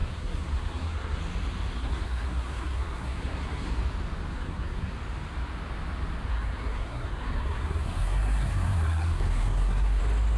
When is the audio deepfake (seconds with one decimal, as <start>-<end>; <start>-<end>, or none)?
0.0-1.2; 1.8-3.8; 4.3-4.9; 6.3-10.0